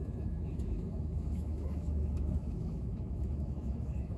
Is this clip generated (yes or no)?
yes